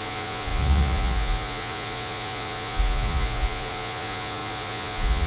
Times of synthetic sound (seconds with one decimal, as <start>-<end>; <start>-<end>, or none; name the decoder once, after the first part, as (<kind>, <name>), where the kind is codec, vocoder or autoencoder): 0.0-5.3 (vocoder, Vocos)